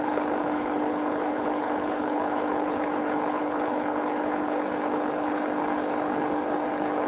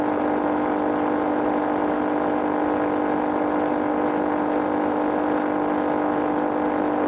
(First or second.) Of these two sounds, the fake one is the first